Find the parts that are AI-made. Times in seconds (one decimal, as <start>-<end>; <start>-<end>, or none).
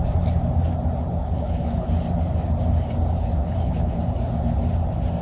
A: 1.2-1.9; 3.4-4.0